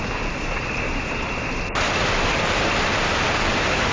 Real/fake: real